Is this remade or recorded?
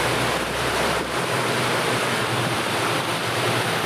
remade